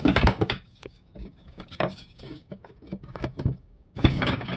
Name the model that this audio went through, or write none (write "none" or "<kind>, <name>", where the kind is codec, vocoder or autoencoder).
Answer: codec, DAC